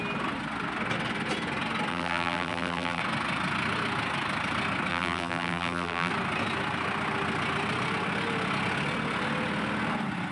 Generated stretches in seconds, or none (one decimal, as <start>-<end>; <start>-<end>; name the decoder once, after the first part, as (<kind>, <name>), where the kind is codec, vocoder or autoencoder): 1.9-3.0 (vocoder, BigVGAN v2); 4.9-6.1